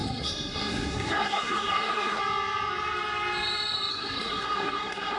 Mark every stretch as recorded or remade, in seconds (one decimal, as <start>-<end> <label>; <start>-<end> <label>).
0.0-2.2 remade; 2.2-3.9 recorded; 3.9-5.2 remade